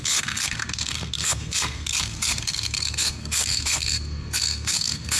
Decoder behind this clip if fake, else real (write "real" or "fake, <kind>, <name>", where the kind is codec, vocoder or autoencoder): fake, codec, SNAC